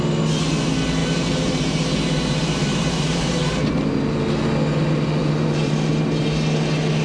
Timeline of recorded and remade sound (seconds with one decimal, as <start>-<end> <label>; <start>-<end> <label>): 0.0-1.0 recorded; 1.0-3.7 remade; 3.7-5.2 recorded; 5.2-5.9 remade; 5.9-7.0 recorded